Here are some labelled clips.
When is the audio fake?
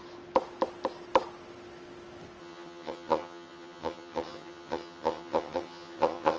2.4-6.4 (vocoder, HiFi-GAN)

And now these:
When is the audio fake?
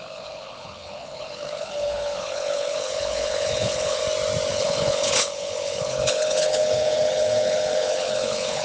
0.0-4.0 (codec, HILCodec); 4.5-8.6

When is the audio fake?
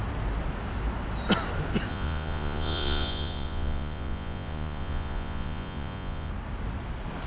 1.9-6.3 (vocoder, Vocos)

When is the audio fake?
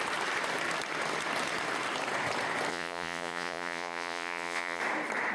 2.7-4.8 (vocoder, Vocos)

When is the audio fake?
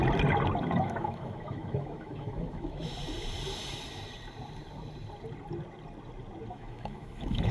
0.6-2.9 (autoencoder, DAC-VAE); 6.5-7.5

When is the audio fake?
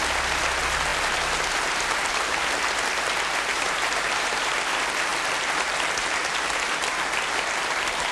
3.5-4.5 (vocoder, BigVGAN v2)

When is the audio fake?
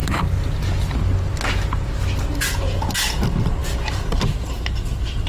none